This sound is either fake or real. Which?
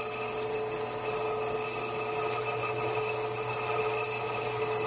real